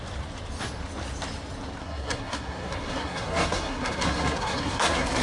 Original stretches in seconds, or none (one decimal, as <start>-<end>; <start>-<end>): 0.0-1.8